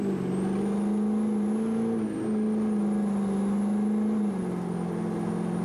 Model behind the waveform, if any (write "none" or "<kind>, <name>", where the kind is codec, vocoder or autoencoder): none